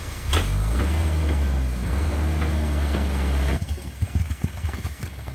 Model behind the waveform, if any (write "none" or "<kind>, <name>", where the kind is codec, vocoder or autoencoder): codec, SNAC